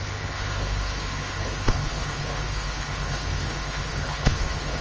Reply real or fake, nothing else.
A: fake